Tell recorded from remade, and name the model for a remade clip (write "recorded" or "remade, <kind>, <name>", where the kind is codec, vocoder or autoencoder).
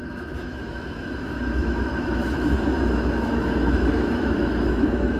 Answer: remade, autoencoder, DAC-VAE